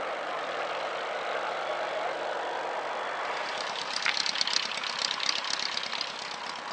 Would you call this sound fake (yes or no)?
no